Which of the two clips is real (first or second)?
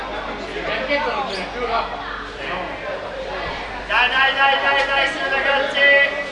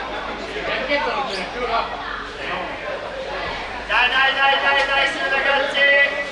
first